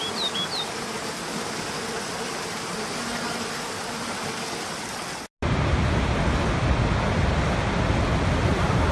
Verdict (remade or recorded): recorded